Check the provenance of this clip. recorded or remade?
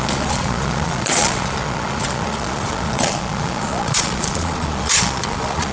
remade